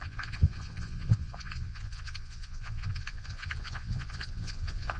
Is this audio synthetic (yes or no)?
yes